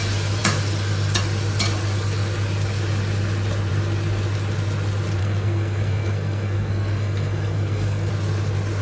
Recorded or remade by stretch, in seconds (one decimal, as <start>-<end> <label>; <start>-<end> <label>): 0.0-5.2 recorded; 5.2-8.1 remade; 8.1-8.8 recorded